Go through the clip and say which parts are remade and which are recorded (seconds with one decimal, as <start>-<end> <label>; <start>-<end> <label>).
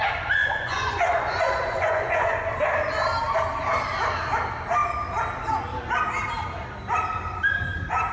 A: 0.0-0.4 recorded; 0.4-2.5 remade; 2.5-8.1 recorded